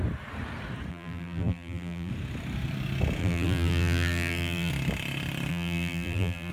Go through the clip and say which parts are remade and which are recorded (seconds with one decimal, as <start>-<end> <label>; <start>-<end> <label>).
0.0-0.9 recorded; 0.9-2.1 remade; 2.1-3.2 recorded; 3.2-4.7 remade; 4.7-5.5 recorded; 5.5-6.5 remade